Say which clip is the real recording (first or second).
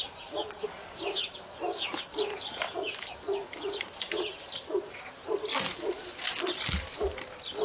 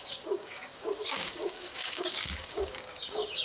first